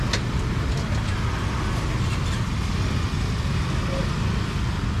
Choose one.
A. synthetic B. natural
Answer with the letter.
B